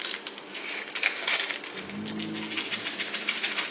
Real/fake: real